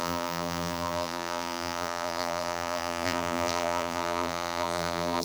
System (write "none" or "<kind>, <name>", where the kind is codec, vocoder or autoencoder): vocoder, BigVGAN v2